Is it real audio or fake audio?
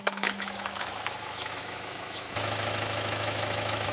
fake